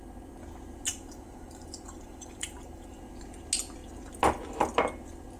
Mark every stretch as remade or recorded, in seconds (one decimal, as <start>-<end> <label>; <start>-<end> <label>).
0.0-0.9 recorded; 0.9-3.0 remade; 3.0-5.4 recorded